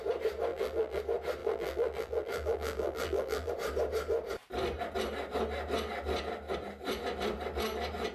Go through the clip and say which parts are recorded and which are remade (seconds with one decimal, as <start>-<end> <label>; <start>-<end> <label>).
0.0-0.5 recorded; 0.5-1.0 remade; 1.0-1.4 recorded; 1.4-3.5 remade; 3.5-8.1 recorded